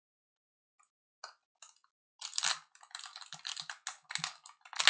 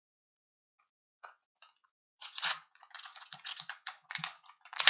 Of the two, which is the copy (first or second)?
second